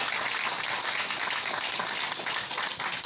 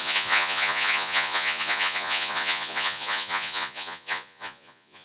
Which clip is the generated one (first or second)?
second